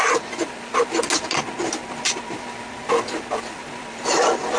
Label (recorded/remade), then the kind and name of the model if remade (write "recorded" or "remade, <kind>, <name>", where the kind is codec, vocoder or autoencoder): recorded